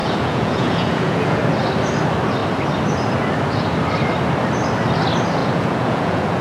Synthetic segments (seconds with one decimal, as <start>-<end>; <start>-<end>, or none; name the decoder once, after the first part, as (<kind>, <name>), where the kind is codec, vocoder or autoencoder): 0.0-1.4 (vocoder, Vocos); 5.4-6.4